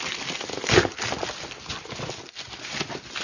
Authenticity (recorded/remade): recorded